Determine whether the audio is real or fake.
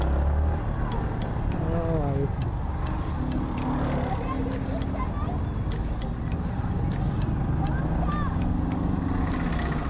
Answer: real